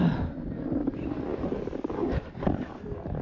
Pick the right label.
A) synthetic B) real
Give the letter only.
B